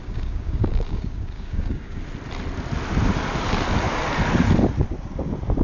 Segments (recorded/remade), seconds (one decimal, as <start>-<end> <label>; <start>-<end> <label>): 0.0-2.0 remade; 2.0-5.6 recorded